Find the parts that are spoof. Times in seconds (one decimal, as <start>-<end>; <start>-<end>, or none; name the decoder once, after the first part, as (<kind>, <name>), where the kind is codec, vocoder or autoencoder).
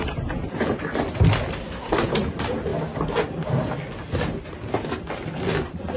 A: 1.6-2.1 (codec, SNAC)